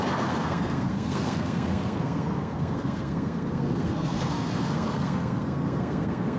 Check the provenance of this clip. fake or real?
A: fake